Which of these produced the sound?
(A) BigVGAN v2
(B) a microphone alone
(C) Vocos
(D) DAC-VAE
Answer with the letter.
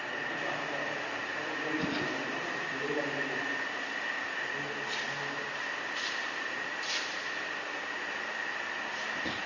B